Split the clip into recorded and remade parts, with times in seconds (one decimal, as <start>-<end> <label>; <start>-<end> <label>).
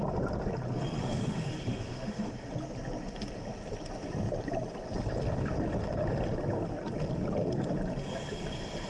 0.0-1.0 recorded; 1.0-2.3 remade; 2.3-8.9 recorded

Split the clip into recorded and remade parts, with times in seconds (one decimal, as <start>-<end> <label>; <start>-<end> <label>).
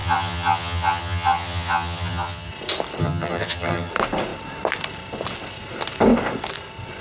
0.0-2.5 remade; 2.5-3.0 recorded; 3.0-3.9 remade; 3.9-7.0 recorded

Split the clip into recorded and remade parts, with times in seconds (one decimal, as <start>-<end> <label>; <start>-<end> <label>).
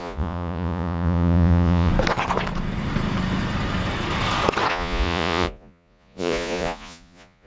0.0-1.9 remade; 1.9-4.7 recorded; 4.7-7.5 remade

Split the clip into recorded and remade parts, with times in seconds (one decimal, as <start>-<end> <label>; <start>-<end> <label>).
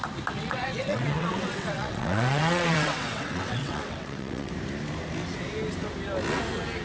0.0-0.4 recorded; 0.4-4.5 remade; 4.5-6.8 recorded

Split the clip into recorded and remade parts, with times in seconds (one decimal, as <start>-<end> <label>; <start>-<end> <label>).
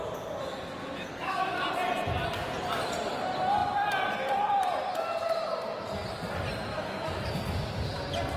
0.0-0.8 recorded; 0.8-1.6 remade; 1.6-6.7 recorded; 6.7-7.3 remade; 7.3-8.4 recorded